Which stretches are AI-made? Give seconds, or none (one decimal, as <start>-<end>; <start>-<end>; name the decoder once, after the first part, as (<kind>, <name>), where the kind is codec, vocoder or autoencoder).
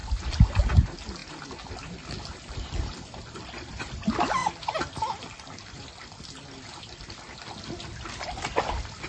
none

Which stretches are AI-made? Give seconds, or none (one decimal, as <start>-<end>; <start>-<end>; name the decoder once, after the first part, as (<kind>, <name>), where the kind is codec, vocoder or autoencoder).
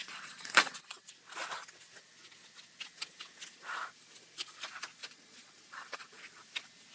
0.0-1.1 (vocoder, Vocos); 5.0-6.2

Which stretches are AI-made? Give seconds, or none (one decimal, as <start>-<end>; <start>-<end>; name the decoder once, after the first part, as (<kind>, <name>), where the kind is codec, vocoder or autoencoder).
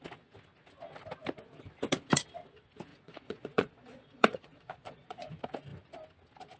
2.9-5.3 (vocoder, Vocos)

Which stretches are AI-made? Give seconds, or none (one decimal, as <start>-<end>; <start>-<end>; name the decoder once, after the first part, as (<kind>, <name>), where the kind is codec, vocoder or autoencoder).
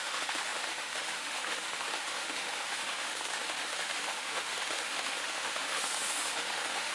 0.0-6.9 (autoencoder, DAC-VAE)